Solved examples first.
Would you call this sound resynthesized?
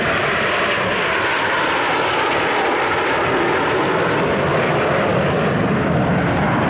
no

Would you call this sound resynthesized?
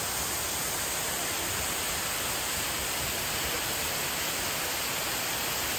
no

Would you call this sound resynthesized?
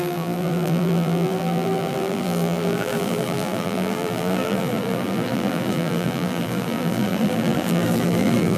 yes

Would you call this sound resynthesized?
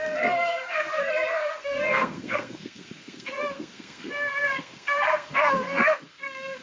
yes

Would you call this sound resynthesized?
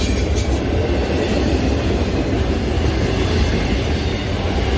no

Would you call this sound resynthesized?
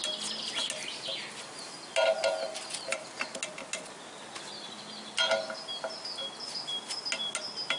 no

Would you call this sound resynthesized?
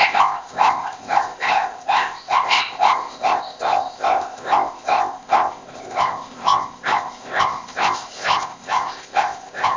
yes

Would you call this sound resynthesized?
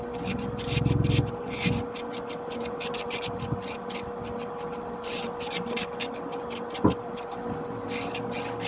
no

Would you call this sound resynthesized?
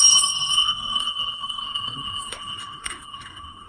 yes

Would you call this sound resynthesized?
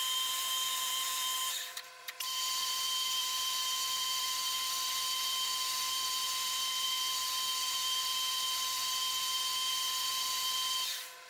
yes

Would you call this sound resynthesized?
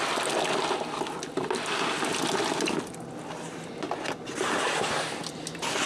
no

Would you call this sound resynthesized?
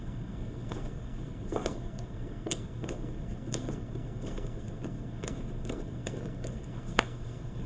yes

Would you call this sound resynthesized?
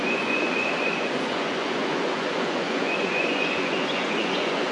yes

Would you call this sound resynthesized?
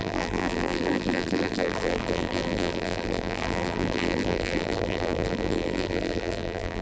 yes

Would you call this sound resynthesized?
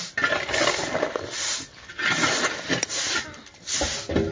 no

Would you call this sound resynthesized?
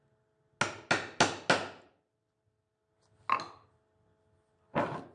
no